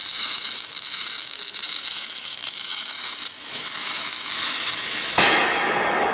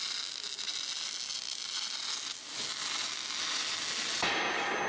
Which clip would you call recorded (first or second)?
second